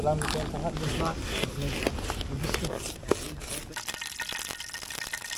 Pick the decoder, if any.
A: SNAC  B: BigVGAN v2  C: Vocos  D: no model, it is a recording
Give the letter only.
D